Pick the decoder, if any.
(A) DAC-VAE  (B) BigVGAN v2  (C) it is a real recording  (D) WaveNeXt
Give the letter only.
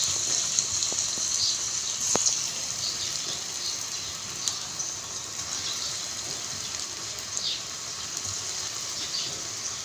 B